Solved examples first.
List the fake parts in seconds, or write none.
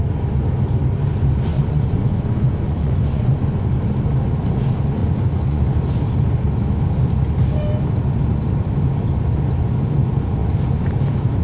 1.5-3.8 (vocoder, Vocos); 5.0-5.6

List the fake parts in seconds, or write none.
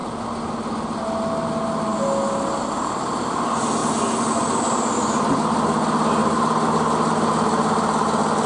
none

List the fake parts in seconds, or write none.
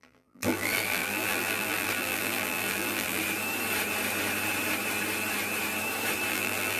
0.0-3.2 (vocoder, BigVGAN v2); 6.3-6.8